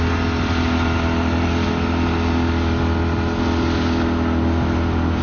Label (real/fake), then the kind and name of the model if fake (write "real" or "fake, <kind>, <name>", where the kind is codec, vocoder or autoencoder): real